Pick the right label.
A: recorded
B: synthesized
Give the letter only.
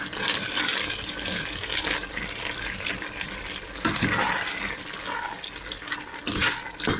A